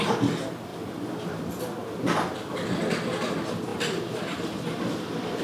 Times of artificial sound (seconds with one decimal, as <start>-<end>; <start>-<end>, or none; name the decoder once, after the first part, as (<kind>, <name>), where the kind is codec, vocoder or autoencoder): 0.7-1.4 (vocoder, BigVGAN v2); 1.8-2.8

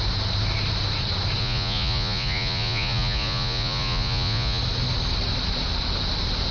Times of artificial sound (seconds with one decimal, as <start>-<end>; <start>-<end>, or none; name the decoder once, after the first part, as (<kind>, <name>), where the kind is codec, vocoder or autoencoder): 1.4-4.6 (vocoder, Vocos)

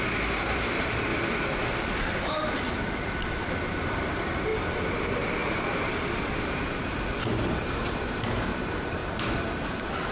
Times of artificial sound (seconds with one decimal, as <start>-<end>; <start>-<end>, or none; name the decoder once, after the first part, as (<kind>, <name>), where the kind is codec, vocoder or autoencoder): 0.0-1.1 (vocoder, BigVGAN v2); 2.7-4.5; 5.0-5.4; 8.6-9.0; 9.7-10.1

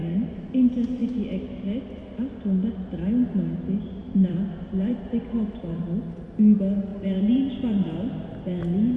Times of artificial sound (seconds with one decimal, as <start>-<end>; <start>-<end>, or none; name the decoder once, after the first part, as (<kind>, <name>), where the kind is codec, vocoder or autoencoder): 4.0-5.8 (vocoder, BigVGAN v2)

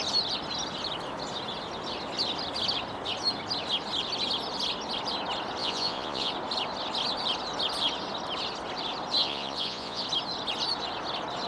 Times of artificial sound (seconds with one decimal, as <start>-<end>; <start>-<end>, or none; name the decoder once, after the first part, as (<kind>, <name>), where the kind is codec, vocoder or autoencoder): 5.6-6.3 (vocoder, Vocos); 9.2-10.0

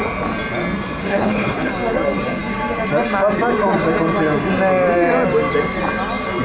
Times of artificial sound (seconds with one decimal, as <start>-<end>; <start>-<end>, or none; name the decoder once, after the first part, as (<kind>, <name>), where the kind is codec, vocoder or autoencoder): 1.0-1.7 (codec, HILCodec)